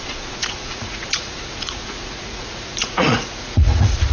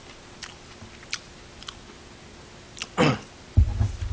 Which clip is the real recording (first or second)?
second